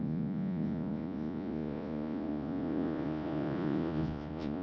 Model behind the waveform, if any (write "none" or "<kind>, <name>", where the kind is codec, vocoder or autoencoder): vocoder, Vocos